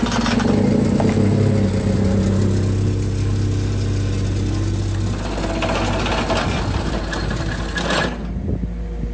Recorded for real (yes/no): yes